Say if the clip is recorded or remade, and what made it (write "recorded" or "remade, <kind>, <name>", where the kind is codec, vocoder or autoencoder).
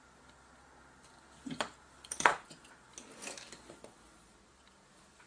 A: recorded